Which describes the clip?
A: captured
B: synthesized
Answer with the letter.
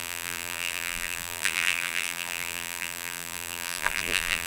B